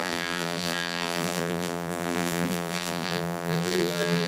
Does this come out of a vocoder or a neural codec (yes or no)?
yes